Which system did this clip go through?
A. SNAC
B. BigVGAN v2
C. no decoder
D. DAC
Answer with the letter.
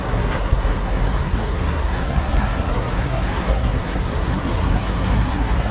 A